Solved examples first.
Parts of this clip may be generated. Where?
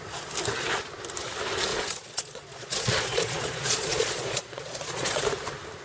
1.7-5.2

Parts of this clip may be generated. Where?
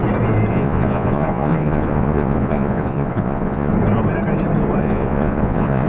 0.5-3.7; 4.8-5.9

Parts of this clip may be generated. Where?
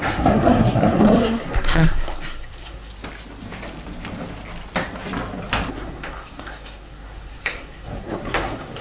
0.0-2.9; 5.7-8.8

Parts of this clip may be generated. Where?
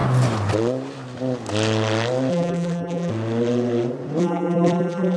2.3-3.1; 4.2-5.2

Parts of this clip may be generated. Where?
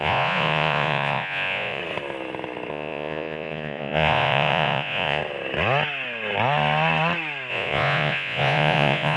0.0-1.8; 2.7-5.2; 7.5-9.2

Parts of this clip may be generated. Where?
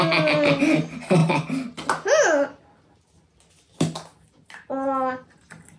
none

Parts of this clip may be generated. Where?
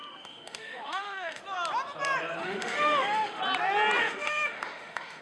0.0-1.4; 2.4-3.4; 4.0-5.2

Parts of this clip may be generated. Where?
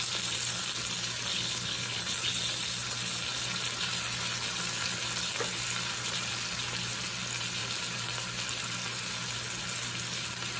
1.3-2.0